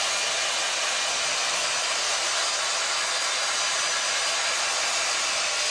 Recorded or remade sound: recorded